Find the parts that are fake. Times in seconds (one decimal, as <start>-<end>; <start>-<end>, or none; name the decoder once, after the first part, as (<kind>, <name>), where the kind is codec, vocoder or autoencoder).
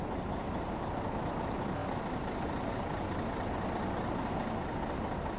none